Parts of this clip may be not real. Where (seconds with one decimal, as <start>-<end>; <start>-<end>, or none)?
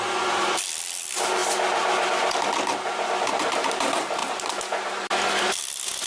none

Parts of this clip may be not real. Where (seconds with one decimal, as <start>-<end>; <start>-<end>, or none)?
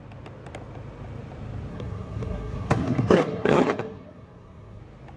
1.7-4.8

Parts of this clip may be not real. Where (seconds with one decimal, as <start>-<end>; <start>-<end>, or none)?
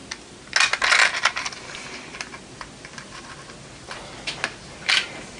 none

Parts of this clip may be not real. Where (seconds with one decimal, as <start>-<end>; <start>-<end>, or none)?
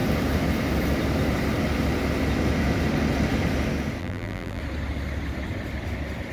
4.0-4.6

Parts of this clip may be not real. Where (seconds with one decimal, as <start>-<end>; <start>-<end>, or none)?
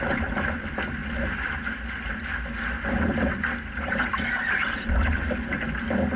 none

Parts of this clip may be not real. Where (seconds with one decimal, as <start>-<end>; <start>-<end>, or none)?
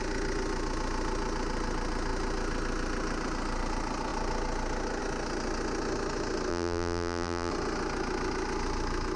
6.5-7.5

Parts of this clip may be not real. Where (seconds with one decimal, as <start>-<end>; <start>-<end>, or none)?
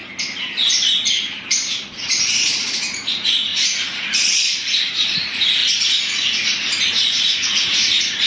1.8-3.5; 4.8-8.3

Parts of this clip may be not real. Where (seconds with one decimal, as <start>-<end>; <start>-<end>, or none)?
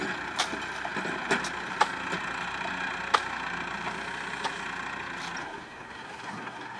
5.4-6.8